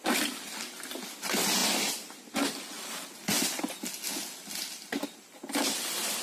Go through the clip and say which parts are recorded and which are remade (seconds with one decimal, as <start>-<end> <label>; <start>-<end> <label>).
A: 0.0-6.2 recorded